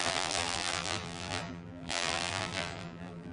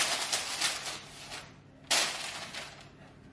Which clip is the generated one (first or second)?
first